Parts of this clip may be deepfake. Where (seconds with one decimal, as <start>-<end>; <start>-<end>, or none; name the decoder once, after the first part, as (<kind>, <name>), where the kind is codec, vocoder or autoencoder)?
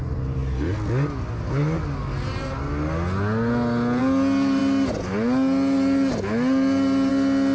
none